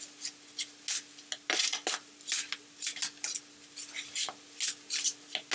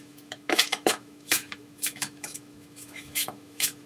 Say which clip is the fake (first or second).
second